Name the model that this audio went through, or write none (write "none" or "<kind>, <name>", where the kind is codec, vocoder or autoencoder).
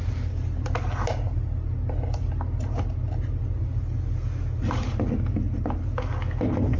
none